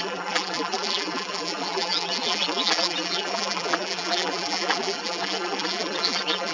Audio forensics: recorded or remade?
remade